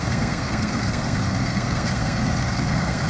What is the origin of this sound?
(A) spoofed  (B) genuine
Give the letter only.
A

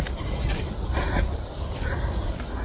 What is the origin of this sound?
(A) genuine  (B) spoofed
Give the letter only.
A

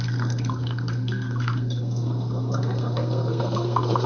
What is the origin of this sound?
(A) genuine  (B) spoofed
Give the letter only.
B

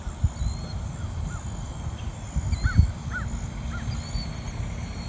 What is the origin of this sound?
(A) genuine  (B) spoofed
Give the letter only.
A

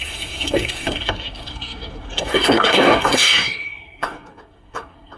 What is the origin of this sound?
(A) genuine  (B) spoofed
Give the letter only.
B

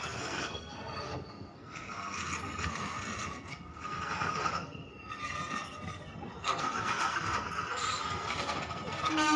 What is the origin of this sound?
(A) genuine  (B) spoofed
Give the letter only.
B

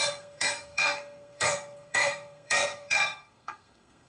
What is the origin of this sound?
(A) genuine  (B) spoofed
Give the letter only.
B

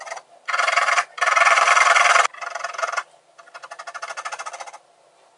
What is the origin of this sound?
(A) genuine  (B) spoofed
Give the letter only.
A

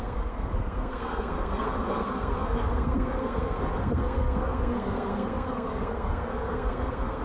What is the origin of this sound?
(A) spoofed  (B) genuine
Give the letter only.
A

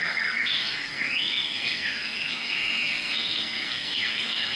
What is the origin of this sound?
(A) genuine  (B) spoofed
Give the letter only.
B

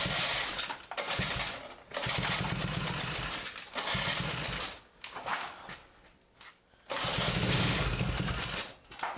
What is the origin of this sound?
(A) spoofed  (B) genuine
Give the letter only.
B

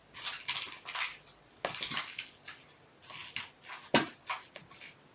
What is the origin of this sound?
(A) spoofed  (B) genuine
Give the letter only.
B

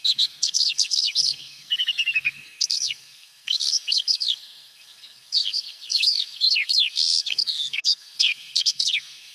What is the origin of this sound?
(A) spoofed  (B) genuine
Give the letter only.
A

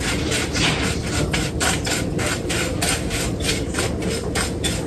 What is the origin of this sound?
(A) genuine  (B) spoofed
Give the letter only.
A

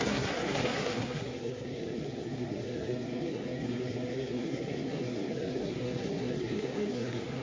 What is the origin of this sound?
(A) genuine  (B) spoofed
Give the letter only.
B